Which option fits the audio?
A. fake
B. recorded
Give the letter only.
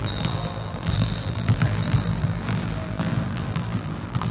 A